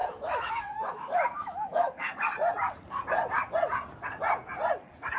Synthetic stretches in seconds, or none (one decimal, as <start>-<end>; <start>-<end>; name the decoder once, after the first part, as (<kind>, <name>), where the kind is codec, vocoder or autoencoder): 0.0-2.1 (autoencoder, DAC-VAE)

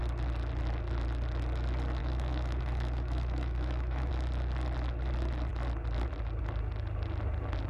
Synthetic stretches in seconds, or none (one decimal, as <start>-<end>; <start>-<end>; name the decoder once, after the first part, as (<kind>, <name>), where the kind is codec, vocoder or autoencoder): 2.0-4.1 (autoencoder, DAC-VAE)

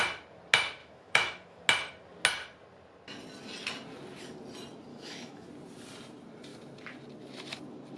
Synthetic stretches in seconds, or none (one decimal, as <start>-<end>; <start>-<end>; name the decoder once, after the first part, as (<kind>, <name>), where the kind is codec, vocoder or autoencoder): 0.8-1.6 (autoencoder, DAC-VAE); 4.9-5.5

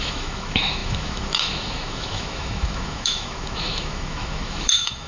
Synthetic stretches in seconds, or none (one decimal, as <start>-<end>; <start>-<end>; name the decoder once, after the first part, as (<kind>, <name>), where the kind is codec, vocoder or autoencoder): 0.0-5.1 (autoencoder, DAC-VAE)